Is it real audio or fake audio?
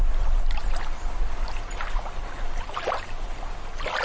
real